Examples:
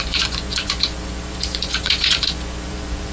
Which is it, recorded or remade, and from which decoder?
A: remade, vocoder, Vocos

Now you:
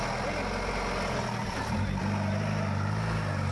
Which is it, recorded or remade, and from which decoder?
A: recorded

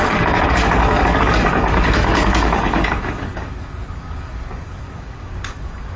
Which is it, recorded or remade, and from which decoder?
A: remade, codec, DAC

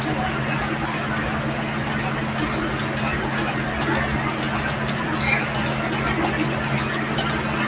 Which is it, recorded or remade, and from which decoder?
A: recorded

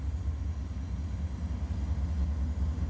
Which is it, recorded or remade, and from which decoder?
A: recorded